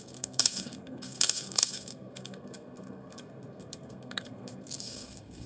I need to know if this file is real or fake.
fake